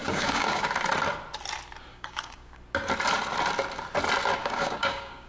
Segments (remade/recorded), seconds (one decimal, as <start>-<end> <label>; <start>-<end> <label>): 0.0-0.7 remade; 0.7-1.9 recorded; 1.9-2.6 remade; 2.6-4.4 recorded; 4.4-5.3 remade